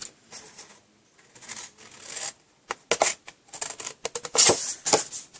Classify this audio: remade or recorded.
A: recorded